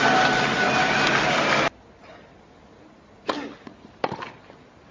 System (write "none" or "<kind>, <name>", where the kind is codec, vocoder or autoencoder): none